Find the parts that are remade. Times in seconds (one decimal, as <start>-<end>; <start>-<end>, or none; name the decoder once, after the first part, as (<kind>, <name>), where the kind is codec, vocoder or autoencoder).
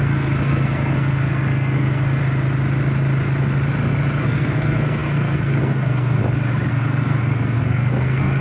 0.0-2.2 (codec, SNAC); 4.2-6.2; 6.7-8.4